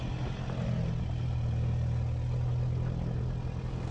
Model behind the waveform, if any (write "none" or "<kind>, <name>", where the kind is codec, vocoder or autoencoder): none